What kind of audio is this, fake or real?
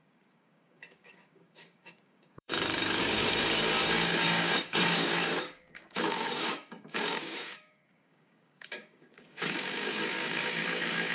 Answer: fake